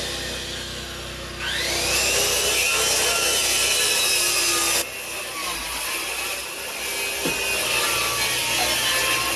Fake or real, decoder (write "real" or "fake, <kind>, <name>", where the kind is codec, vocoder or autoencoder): real